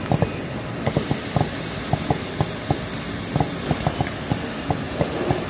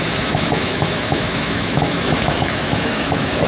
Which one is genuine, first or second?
first